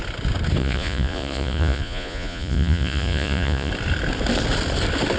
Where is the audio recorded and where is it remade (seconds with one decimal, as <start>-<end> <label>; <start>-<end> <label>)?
0.0-0.6 recorded; 0.6-3.7 remade; 3.7-5.2 recorded